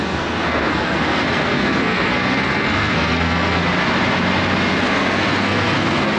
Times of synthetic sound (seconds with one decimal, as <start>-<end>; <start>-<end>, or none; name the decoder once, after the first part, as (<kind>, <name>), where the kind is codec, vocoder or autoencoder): 0.0-3.6 (codec, SNAC); 4.8-6.2